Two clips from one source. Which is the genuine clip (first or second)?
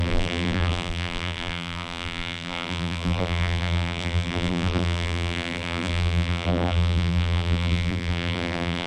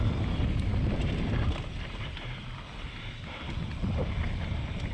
second